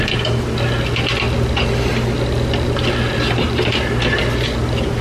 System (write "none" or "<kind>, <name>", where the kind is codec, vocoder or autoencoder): vocoder, BigVGAN v2